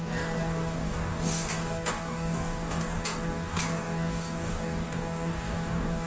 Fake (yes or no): yes